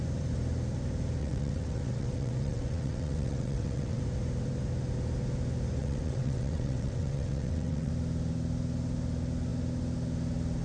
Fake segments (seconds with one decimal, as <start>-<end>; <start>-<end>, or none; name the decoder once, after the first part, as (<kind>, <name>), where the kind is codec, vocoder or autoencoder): 1.2-4.0 (vocoder, WaveNeXt); 5.8-7.9